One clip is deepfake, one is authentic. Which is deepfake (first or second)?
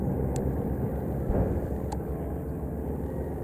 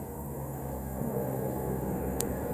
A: second